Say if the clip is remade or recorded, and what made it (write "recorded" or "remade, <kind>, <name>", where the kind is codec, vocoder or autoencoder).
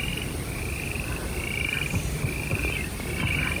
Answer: recorded